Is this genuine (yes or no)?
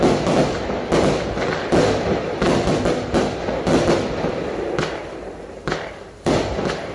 yes